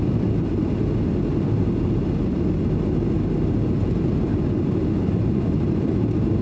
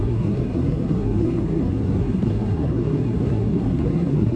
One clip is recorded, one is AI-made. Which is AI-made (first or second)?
second